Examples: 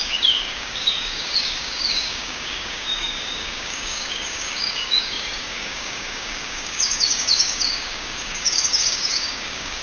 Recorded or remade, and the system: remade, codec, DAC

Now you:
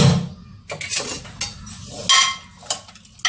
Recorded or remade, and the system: recorded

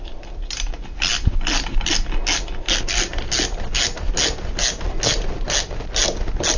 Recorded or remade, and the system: recorded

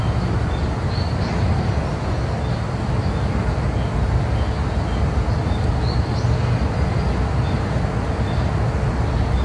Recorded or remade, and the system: recorded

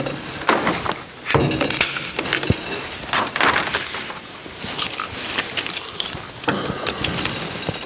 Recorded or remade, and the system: recorded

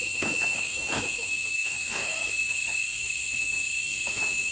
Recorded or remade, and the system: remade, autoencoder, DAC-VAE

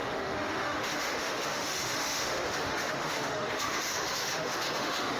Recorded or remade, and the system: remade, autoencoder, DAC-VAE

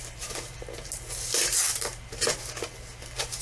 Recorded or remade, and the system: recorded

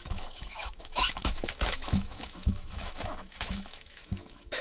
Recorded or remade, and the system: remade, autoencoder, DAC-VAE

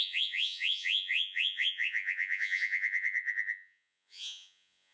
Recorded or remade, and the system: remade, vocoder, Vocos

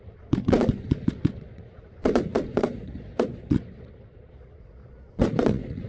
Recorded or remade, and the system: remade, vocoder, Vocos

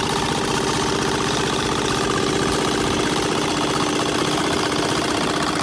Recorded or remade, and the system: recorded